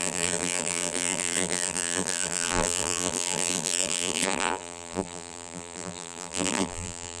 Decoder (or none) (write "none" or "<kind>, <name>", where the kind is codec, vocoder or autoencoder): vocoder, BigVGAN v2